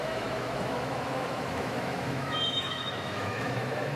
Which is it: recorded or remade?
remade